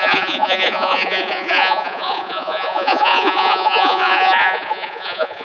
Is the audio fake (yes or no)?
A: yes